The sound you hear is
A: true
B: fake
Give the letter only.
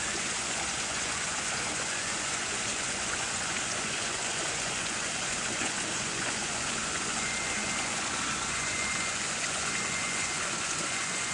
B